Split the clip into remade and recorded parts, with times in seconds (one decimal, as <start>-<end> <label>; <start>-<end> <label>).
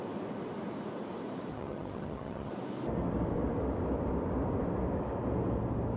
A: 0.0-1.5 recorded; 1.5-2.5 remade; 2.5-6.0 recorded